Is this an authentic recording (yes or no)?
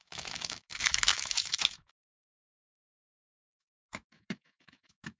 no